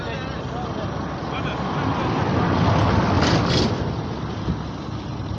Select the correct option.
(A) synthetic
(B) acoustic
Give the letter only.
B